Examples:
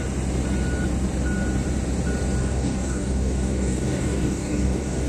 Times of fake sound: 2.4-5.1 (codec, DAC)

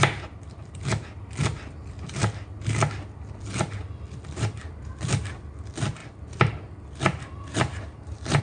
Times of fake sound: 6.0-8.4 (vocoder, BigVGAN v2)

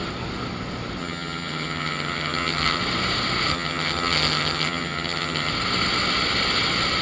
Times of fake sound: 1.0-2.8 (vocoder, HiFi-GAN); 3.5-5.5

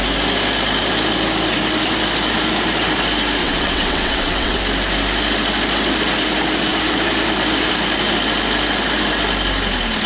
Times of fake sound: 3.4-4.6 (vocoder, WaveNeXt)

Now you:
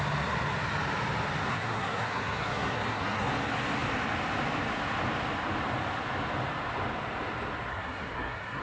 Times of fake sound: 1.5-3.3 (codec, SNAC); 7.7-8.6

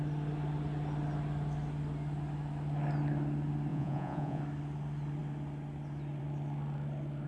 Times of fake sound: 3.7-4.4 (vocoder, Vocos)

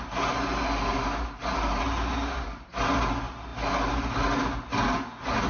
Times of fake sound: none

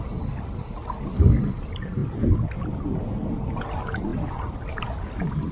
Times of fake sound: 4.1-5.5 (vocoder, BigVGAN v2)